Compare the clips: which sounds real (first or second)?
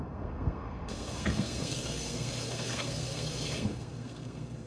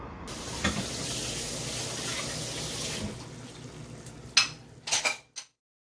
second